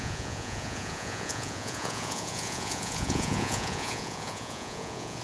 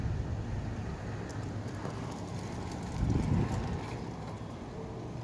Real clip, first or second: second